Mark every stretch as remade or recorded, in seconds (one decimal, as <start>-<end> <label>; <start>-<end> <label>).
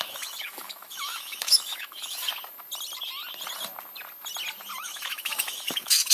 0.0-2.2 remade; 2.2-4.8 recorded; 4.8-6.1 remade